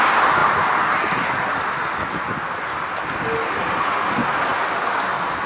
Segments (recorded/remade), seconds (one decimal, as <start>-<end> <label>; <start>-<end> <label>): 0.0-5.5 recorded